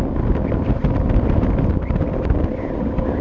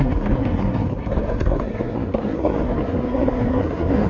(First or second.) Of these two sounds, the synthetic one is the second